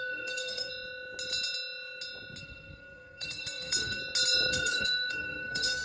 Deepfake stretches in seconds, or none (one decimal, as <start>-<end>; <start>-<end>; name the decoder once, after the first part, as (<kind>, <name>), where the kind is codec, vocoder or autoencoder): 0.0-0.7 (codec, SNAC); 2.4-4.0; 4.5-5.8